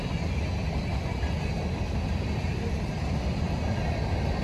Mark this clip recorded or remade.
recorded